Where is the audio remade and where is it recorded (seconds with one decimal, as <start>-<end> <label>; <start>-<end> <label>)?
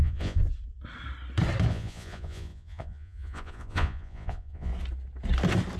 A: 0.0-0.4 remade; 0.4-1.7 recorded; 1.7-4.7 remade; 4.7-5.8 recorded